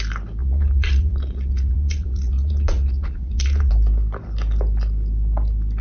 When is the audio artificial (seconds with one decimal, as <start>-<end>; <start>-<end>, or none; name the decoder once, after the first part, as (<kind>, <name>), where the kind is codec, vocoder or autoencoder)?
0.4-3.7 (vocoder, Vocos)